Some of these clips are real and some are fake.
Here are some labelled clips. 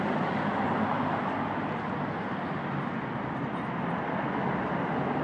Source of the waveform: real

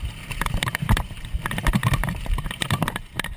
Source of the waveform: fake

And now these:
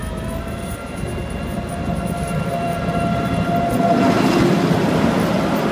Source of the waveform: real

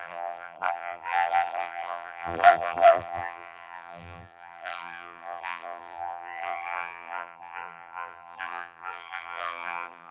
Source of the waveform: fake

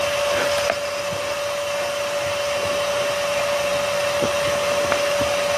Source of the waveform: real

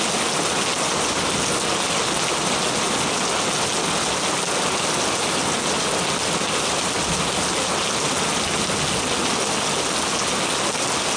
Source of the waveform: real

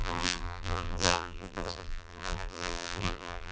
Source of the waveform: fake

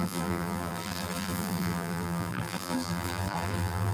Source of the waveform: fake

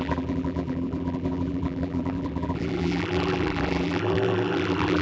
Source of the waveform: fake